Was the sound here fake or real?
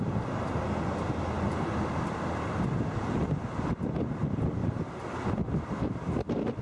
real